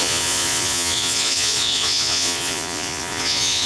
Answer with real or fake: fake